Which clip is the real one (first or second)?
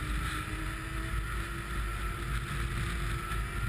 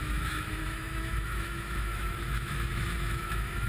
first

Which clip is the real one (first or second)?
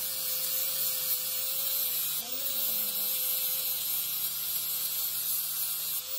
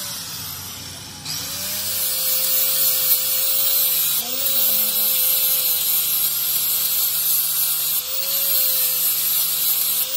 second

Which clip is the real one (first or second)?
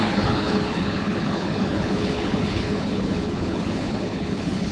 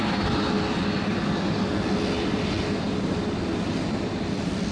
second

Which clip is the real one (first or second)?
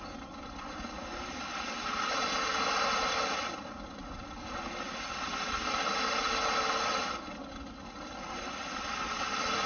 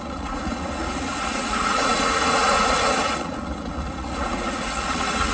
first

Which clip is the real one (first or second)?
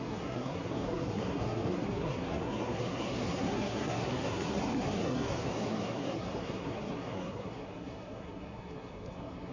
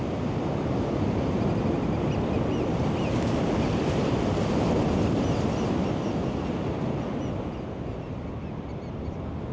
second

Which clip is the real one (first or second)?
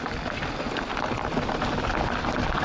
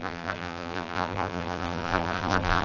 first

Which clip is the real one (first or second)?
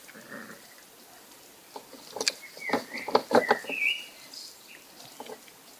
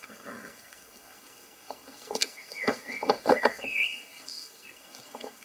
first